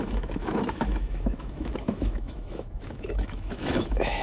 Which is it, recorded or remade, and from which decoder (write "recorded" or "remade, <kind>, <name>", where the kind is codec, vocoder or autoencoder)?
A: remade, autoencoder, DAC-VAE